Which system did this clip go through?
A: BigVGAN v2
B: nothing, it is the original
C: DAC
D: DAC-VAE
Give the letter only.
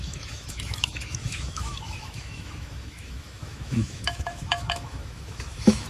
D